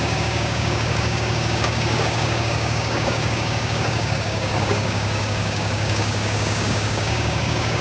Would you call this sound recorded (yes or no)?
no